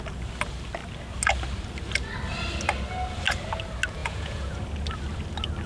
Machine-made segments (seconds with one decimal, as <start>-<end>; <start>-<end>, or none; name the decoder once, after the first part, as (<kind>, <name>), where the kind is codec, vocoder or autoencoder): 4.0-4.6 (vocoder, Vocos)